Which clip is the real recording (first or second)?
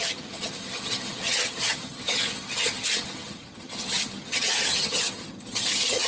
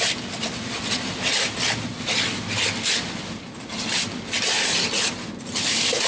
second